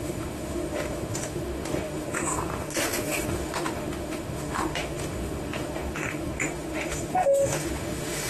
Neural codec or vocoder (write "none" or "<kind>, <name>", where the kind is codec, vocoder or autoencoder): autoencoder, DAC-VAE